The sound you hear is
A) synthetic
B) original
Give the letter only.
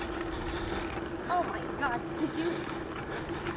B